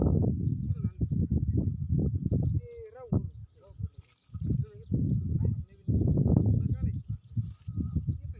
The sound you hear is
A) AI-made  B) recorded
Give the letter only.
B